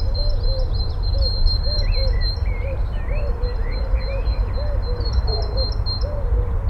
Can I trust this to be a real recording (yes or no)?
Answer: no